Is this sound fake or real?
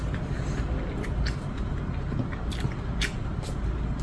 real